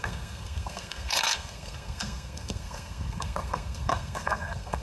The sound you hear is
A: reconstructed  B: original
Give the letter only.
A